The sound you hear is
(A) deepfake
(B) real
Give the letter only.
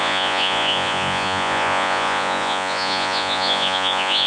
A